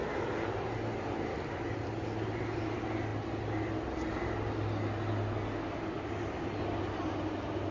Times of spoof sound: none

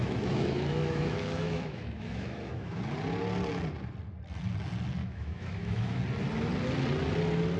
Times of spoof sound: 0.0-2.8 (autoencoder, DAC-VAE); 5.0-6.0